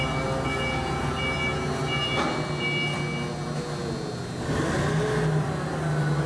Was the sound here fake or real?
real